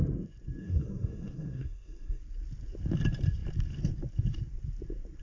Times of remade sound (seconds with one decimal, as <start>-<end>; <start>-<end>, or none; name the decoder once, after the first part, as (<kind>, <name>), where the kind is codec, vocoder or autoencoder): 0.6-2.2 (codec, SNAC)